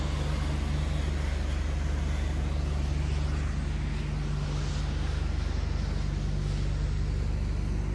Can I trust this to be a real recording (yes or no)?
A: yes